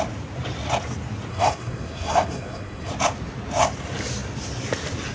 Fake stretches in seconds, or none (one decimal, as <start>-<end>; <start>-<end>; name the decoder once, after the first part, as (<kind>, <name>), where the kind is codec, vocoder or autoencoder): 1.3-2.9 (codec, SNAC)